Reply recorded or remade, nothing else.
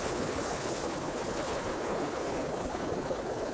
remade